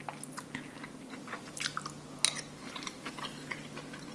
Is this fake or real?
real